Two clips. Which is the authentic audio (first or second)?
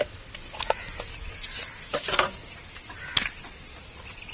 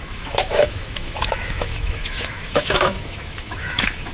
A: first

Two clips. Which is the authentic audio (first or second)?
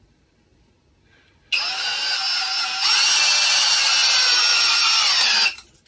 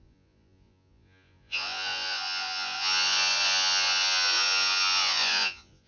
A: first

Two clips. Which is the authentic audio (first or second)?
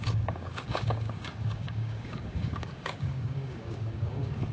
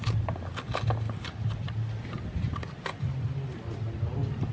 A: second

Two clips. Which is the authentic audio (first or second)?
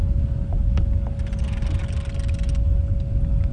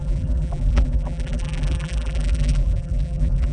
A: first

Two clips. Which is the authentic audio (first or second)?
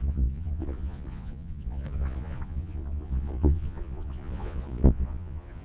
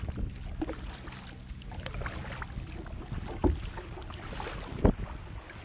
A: second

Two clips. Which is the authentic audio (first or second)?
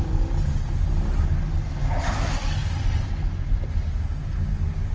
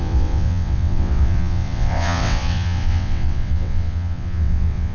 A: first